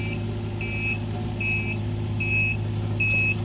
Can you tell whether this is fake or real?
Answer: real